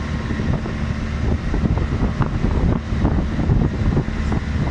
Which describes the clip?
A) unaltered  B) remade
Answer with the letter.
A